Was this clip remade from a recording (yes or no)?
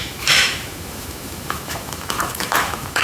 yes